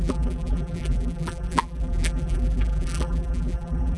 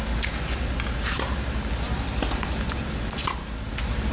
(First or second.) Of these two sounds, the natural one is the second